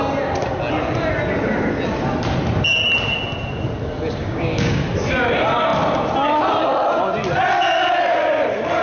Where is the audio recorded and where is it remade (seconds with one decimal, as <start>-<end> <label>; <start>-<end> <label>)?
0.0-4.2 recorded; 4.2-4.8 remade; 4.8-8.8 recorded